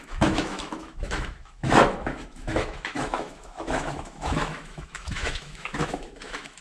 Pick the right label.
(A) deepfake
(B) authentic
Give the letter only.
A